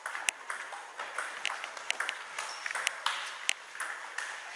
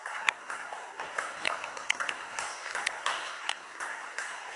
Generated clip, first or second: second